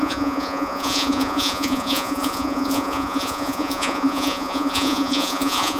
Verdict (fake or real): fake